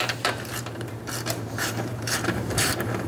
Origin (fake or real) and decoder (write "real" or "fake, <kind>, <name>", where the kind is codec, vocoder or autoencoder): fake, vocoder, BigVGAN v2